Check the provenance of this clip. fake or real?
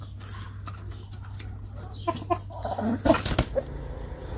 real